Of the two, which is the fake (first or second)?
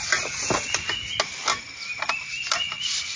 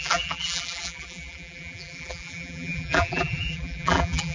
second